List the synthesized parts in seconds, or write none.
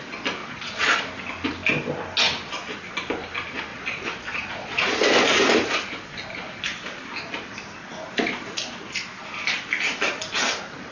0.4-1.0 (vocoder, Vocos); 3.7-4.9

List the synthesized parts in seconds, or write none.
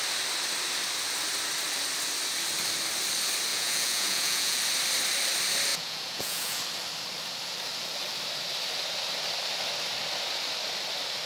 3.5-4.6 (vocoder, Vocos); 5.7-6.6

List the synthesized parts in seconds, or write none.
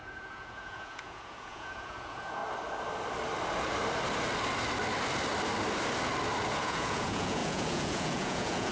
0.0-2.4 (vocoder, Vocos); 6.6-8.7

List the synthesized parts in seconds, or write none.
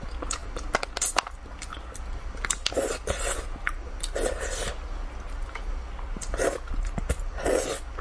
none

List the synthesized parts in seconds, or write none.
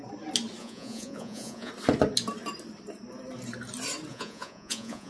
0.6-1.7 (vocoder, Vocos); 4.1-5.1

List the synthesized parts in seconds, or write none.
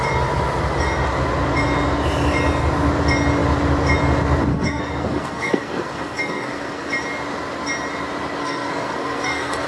4.5-6.9 (codec, SNAC); 8.4-9.7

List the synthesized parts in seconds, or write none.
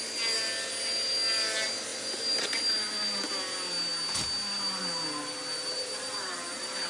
none